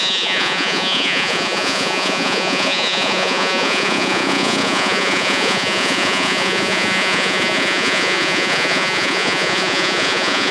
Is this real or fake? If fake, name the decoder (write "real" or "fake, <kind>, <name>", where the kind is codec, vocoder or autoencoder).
fake, vocoder, Vocos